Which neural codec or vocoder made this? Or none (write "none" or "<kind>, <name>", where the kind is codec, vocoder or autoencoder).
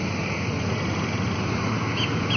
none